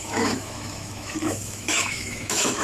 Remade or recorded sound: remade